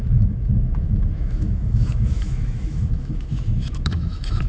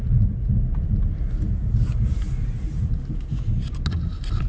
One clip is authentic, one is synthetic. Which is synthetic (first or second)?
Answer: first